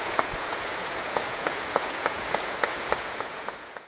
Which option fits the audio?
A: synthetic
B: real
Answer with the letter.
A